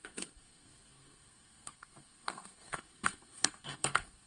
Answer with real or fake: fake